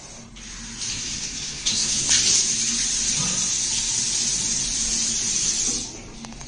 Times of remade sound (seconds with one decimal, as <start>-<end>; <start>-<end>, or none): 0.9-2.0